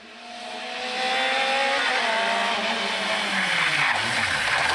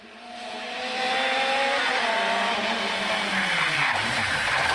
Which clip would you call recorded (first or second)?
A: first